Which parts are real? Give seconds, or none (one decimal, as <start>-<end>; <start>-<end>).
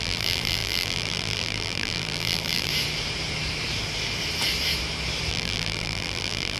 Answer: 2.7-5.3